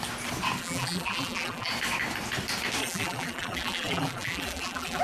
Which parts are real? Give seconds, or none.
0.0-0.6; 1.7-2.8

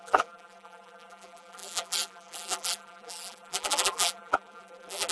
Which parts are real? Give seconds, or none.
none

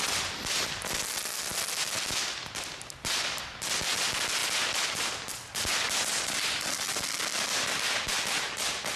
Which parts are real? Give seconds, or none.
0.0-1.5; 2.7-4.4

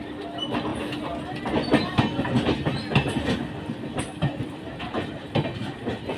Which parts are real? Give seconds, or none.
0.7-4.0